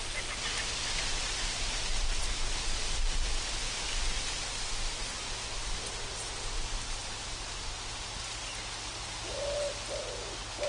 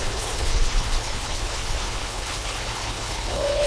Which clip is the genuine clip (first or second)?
first